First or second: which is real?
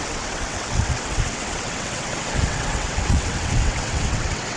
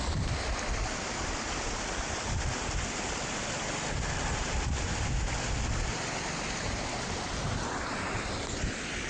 second